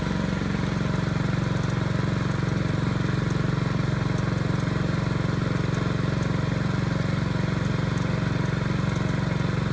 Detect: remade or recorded recorded